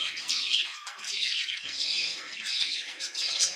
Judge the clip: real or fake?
fake